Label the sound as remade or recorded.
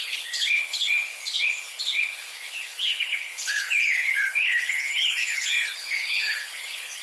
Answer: remade